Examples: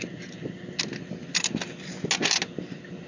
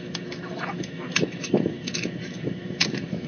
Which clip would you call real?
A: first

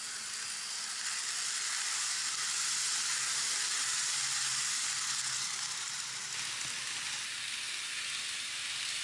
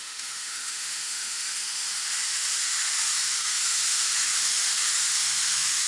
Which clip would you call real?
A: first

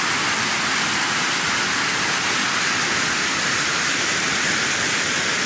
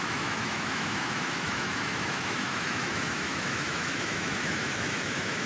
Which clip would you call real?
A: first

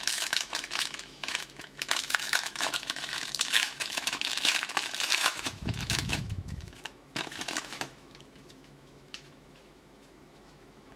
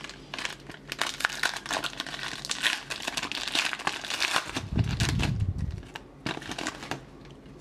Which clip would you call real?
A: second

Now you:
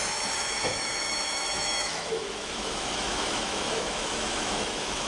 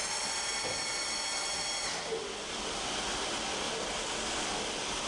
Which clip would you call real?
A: second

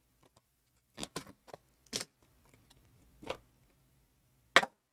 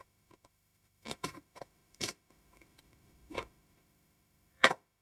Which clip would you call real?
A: first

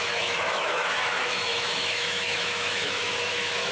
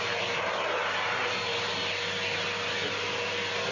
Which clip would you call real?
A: second